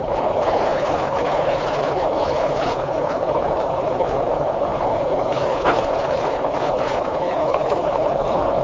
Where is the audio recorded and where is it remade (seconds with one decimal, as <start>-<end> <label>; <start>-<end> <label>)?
0.0-8.6 remade